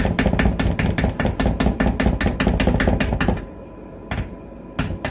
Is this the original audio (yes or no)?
yes